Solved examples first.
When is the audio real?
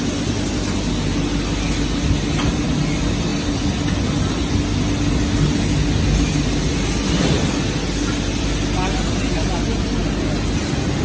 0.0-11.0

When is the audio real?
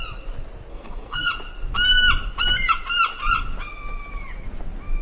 0.0-0.7; 1.3-5.0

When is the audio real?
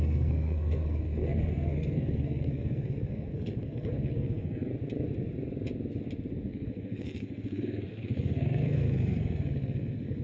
4.7-6.5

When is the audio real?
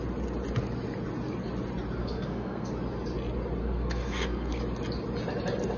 0.0-2.0; 2.7-3.6; 4.6-5.8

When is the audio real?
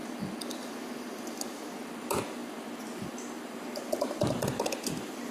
0.0-5.3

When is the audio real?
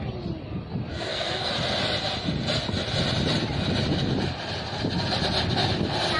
0.0-0.9; 1.5-6.2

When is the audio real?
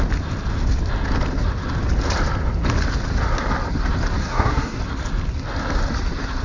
0.0-4.2; 4.8-6.4